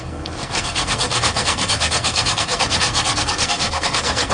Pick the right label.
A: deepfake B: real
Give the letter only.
A